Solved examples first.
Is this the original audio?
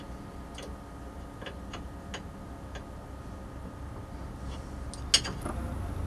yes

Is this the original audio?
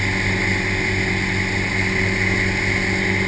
yes